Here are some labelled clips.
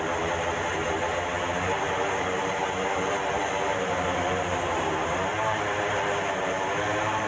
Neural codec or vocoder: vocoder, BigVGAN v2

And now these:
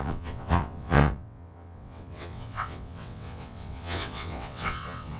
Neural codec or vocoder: vocoder, WaveNeXt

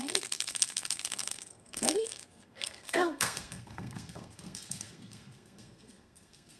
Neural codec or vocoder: codec, SNAC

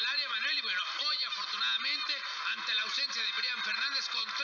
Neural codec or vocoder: none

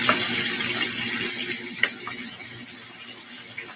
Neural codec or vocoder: none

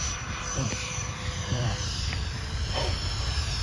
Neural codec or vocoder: vocoder, BigVGAN v2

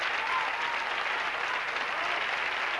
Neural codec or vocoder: none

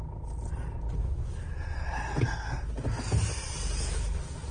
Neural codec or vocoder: none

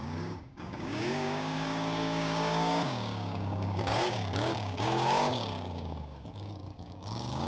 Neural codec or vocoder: codec, DAC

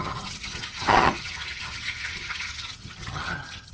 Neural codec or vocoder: vocoder, HiFi-GAN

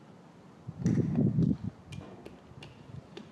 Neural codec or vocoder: none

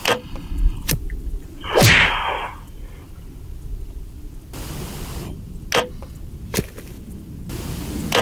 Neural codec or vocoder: none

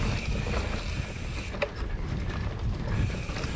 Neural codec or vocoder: none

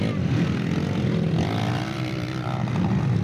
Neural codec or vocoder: none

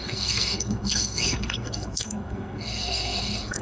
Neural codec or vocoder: codec, SNAC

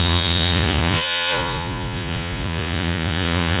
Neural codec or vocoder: vocoder, Vocos